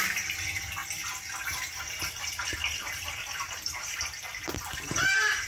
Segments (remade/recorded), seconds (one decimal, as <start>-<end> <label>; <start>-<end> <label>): 0.0-2.6 recorded; 2.6-4.0 remade; 4.0-5.5 recorded